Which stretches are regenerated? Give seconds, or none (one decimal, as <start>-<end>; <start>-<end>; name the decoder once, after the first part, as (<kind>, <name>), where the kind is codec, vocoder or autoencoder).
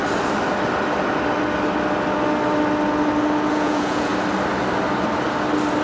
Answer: 3.5-4.1 (vocoder, Vocos)